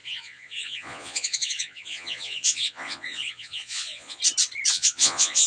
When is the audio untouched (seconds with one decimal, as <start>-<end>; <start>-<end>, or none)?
4.2-4.7